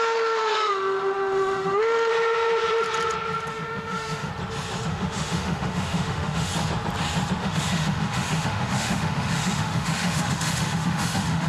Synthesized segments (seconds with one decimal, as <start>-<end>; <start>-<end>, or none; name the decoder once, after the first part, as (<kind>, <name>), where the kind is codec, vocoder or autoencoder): 0.0-2.1 (autoencoder, DAC-VAE); 3.5-4.3; 4.9-6.5; 7.4-11.5